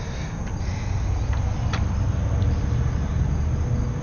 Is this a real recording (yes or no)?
yes